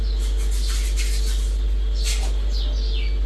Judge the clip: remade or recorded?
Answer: recorded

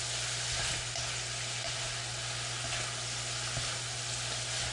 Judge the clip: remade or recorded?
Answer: recorded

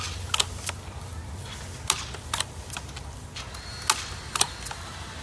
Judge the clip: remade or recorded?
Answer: recorded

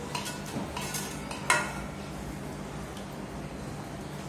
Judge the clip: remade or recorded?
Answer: recorded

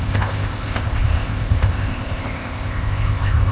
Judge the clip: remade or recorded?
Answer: remade